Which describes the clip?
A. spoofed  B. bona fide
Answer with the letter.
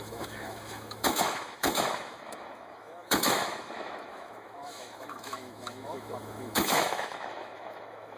A